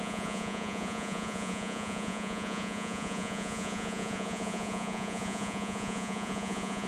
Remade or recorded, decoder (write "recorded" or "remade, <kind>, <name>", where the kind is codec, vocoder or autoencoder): remade, vocoder, Vocos